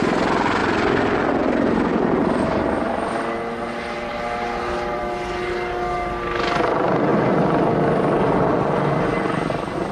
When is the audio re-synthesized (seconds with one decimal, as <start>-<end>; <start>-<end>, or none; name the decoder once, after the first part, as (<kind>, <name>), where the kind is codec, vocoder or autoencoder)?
none